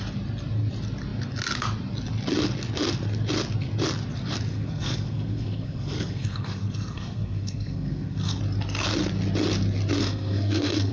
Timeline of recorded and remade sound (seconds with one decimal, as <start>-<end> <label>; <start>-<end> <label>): 0.0-4.5 recorded; 4.5-8.4 remade; 8.4-10.0 recorded; 10.0-10.9 remade